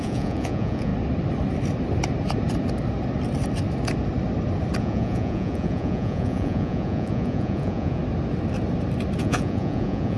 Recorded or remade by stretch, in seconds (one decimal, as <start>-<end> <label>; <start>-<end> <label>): 0.0-0.9 remade; 0.9-4.8 recorded; 4.8-8.0 remade; 8.0-9.2 recorded; 9.2-10.2 remade